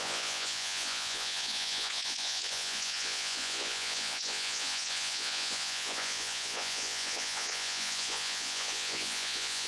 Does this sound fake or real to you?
fake